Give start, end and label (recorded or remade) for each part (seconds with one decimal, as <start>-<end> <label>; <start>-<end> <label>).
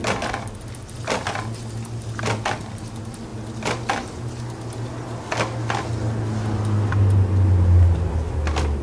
0.0-8.8 recorded